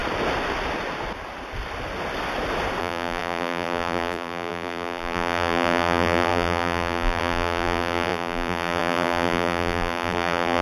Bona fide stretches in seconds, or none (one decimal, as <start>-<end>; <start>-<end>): 0.0-2.8